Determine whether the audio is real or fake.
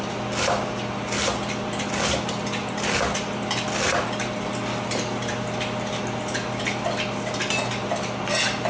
real